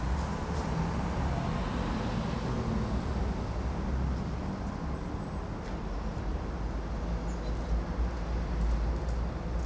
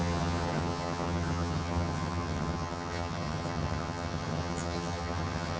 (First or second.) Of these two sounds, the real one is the first